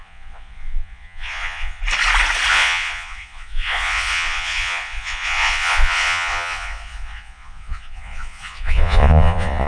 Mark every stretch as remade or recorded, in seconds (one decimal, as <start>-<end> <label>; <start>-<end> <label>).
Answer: 0.0-1.8 remade; 1.8-2.5 recorded; 2.5-9.7 remade